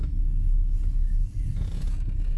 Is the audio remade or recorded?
recorded